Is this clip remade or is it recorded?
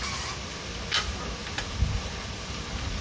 remade